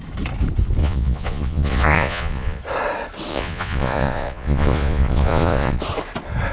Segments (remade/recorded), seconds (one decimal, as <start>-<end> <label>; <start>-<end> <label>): 0.0-0.8 recorded; 0.8-2.6 remade; 2.6-3.3 recorded; 3.3-5.8 remade; 5.8-6.5 recorded